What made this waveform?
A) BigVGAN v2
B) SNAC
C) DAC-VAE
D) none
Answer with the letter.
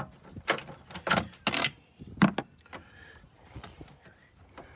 D